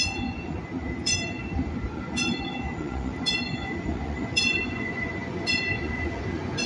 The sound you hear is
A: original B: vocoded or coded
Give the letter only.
B